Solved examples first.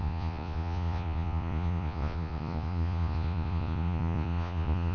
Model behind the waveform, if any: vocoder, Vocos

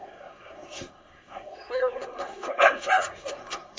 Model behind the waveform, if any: codec, SNAC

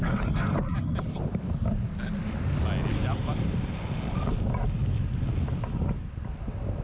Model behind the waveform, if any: none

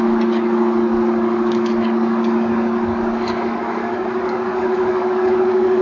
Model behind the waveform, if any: codec, DAC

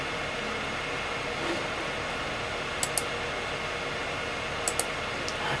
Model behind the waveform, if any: none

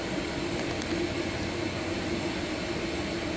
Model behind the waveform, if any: none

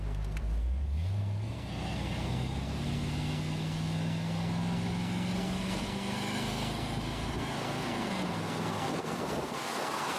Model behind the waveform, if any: codec, SNAC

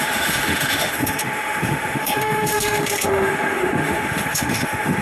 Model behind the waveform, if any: autoencoder, DAC-VAE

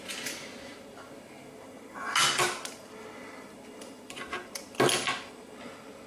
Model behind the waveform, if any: none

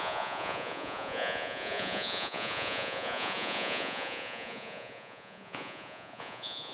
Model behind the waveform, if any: vocoder, Vocos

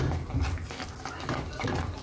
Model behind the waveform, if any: none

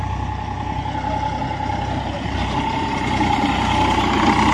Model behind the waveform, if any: none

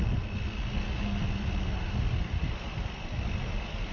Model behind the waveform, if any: none